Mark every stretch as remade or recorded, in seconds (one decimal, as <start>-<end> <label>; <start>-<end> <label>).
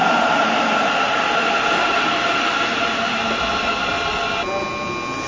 0.0-5.3 recorded